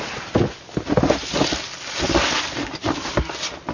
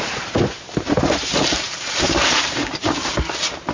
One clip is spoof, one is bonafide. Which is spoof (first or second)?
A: second